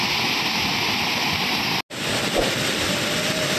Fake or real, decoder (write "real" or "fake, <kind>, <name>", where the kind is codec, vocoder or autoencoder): real